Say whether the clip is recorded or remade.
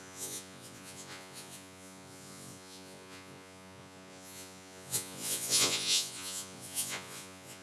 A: remade